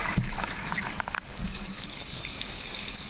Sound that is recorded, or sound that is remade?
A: remade